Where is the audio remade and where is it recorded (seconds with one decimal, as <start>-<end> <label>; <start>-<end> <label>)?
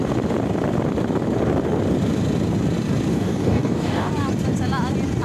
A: 0.0-3.1 recorded; 3.1-4.1 remade; 4.1-5.2 recorded